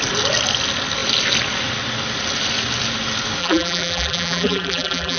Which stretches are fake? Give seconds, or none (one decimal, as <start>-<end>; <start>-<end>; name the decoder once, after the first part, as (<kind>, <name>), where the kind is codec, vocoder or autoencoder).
3.4-5.2 (vocoder, BigVGAN v2)